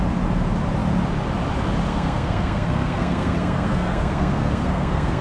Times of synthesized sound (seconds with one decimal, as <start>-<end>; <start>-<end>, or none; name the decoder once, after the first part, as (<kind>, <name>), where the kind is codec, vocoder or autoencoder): 1.9-5.2 (codec, SNAC)